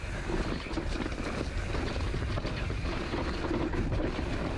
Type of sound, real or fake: real